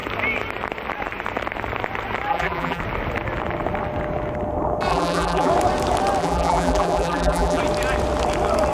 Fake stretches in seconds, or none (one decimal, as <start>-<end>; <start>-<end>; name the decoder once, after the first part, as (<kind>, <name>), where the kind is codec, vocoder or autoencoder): 2.3-2.8 (vocoder, BigVGAN v2); 4.9-5.5; 6.2-7.6